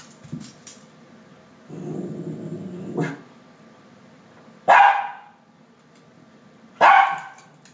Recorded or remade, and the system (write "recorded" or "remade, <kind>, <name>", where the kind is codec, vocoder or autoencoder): recorded